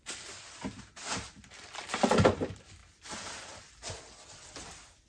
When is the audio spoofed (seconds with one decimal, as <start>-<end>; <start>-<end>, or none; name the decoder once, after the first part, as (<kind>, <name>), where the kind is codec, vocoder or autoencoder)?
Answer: none